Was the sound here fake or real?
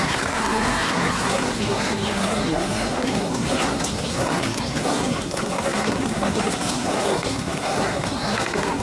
fake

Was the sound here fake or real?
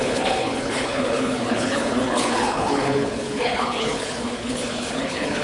fake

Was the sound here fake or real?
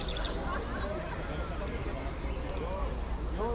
real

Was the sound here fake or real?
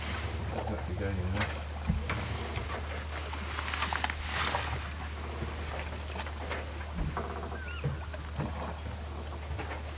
real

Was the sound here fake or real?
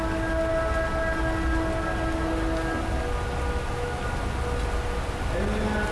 real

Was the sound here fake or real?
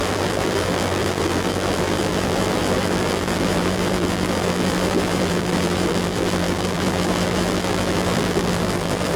fake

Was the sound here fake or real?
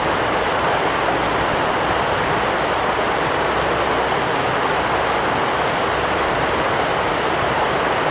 real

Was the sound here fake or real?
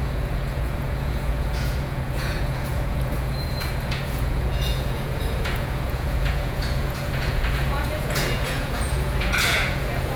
fake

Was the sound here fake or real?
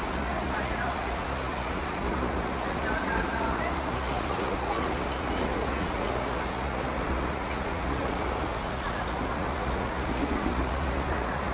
fake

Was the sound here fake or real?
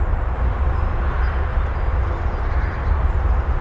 real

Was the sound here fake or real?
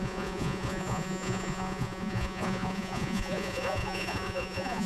fake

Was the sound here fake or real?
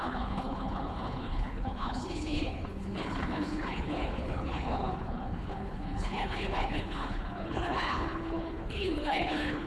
fake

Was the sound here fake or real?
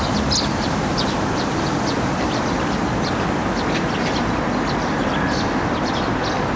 real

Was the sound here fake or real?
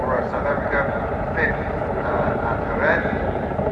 fake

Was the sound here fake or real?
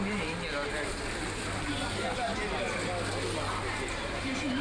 real